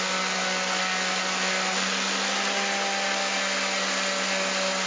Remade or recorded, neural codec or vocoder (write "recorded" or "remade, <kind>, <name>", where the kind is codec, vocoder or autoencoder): recorded